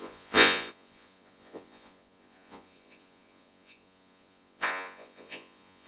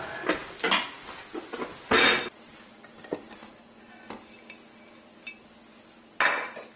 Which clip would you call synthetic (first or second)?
first